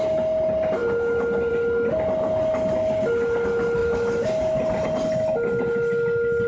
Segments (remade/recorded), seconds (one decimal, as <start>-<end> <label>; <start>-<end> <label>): 0.0-6.5 recorded